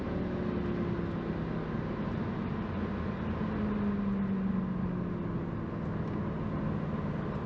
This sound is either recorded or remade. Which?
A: recorded